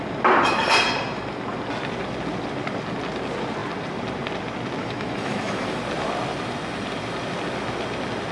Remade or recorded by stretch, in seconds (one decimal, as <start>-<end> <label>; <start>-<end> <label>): 0.0-4.8 recorded; 4.8-5.8 remade; 5.8-8.3 recorded